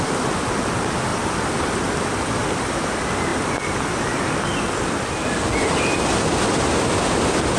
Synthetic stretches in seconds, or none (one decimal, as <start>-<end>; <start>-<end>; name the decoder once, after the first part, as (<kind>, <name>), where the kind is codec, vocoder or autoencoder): none